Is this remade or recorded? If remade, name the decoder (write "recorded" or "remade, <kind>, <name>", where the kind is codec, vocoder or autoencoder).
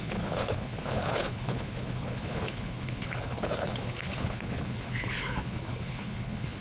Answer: remade, codec, HILCodec